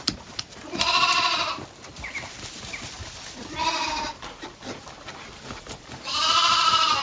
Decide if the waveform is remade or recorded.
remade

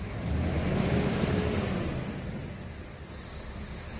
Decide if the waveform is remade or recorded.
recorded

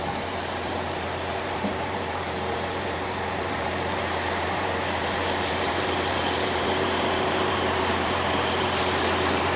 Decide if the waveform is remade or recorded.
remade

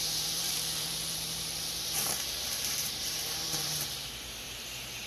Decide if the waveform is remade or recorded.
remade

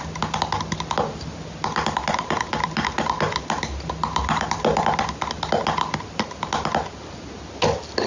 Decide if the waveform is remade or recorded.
recorded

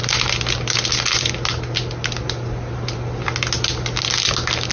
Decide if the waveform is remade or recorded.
recorded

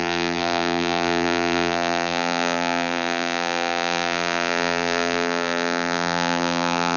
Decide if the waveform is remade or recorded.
remade